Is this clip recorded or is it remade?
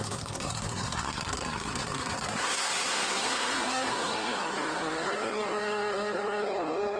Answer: remade